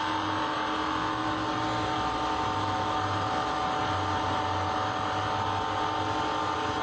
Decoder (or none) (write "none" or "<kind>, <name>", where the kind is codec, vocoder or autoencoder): none